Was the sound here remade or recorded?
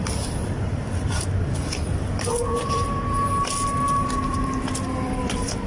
remade